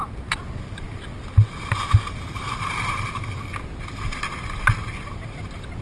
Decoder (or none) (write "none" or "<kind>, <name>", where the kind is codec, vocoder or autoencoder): none